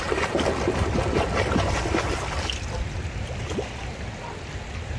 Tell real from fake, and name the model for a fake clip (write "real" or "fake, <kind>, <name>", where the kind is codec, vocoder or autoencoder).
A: real